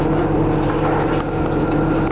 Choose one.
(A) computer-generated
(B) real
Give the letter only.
B